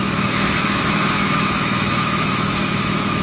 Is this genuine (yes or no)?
no